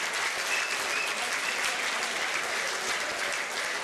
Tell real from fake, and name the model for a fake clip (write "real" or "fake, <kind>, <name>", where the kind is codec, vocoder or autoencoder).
real